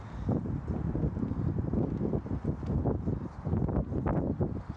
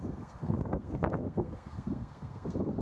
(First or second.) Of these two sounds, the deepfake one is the second